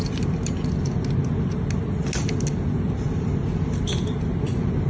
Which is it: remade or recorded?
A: recorded